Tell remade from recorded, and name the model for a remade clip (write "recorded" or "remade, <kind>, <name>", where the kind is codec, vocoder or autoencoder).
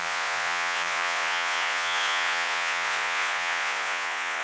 remade, vocoder, Vocos